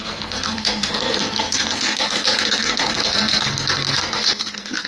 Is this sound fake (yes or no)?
yes